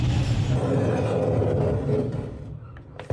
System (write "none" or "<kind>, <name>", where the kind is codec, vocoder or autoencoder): vocoder, BigVGAN v2